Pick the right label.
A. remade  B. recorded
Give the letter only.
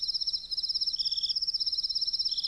B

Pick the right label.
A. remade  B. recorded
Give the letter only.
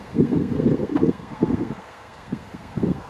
A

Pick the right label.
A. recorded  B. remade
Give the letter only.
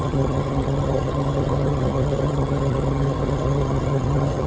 B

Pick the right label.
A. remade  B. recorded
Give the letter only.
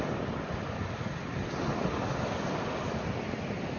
B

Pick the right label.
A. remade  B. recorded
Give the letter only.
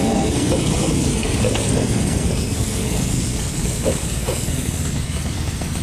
A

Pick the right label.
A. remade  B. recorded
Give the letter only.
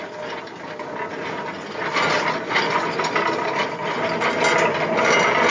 B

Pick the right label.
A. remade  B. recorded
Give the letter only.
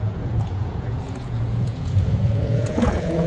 A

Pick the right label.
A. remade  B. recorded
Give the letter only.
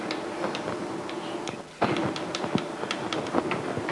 B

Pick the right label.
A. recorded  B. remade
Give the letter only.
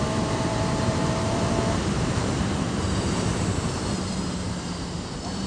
B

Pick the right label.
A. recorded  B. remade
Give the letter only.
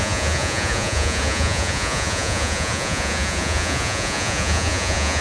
B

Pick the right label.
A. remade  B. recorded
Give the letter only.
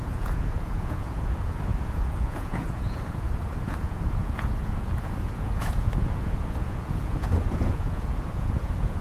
A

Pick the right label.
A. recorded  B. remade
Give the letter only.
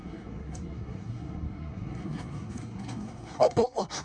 B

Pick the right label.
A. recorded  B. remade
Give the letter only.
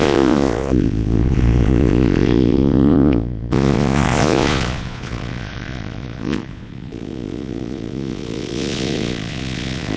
B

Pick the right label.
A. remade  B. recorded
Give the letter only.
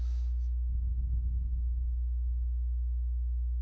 B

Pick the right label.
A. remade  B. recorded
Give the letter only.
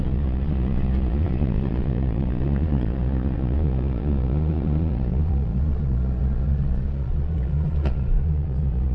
A